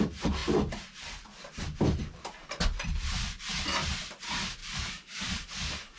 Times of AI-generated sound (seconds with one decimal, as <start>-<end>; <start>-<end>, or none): 4.6-6.0